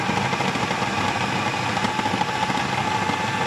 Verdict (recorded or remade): recorded